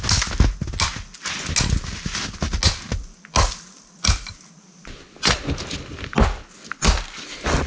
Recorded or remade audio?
recorded